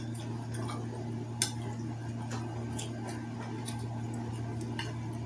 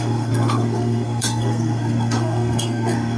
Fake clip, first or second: second